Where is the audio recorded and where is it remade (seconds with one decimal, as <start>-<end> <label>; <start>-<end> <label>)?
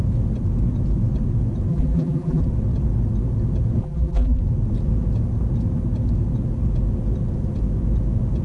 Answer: 0.0-1.7 recorded; 1.7-2.4 remade; 2.4-3.8 recorded; 3.8-4.4 remade; 4.4-8.4 recorded